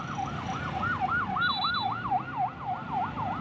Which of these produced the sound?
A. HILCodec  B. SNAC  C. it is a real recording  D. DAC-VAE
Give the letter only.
C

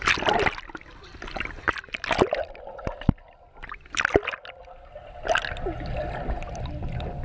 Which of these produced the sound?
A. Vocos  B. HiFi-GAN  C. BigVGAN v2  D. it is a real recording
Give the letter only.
D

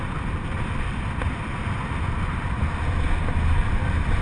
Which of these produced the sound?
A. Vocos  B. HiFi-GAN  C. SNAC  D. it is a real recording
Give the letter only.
D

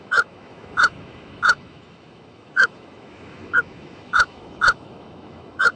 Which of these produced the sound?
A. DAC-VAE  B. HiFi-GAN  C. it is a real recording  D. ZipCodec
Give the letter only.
A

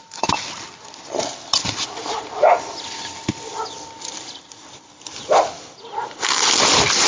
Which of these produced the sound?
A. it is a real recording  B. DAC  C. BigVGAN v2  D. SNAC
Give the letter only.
A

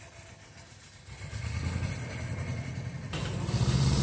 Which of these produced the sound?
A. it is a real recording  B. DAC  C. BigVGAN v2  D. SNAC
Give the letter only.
C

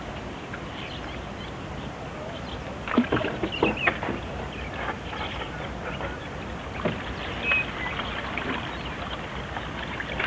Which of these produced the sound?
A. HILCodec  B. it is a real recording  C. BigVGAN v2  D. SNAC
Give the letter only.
B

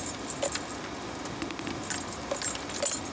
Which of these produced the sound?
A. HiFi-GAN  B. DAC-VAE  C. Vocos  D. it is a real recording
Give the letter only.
D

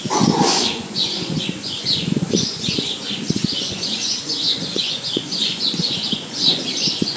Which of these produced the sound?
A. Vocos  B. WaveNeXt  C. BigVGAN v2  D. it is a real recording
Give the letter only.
A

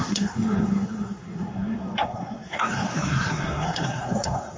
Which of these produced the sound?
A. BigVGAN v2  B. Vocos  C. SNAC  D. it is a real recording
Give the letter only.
C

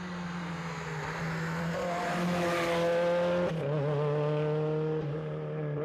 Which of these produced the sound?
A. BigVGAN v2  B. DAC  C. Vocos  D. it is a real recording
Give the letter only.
D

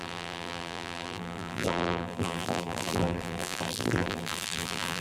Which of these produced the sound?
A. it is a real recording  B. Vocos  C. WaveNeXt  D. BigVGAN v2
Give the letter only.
D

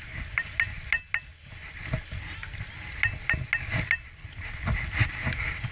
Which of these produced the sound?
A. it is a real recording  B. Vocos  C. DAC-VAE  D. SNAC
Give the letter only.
A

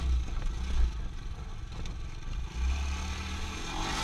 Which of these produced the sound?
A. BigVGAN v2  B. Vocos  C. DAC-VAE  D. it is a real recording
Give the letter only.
D